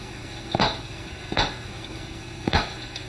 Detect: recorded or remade remade